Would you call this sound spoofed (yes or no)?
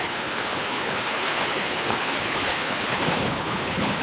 yes